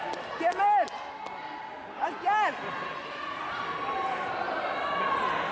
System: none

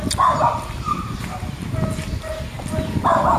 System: none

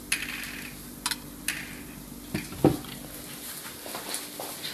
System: none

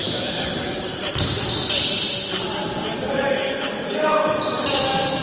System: none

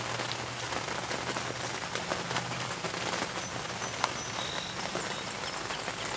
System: none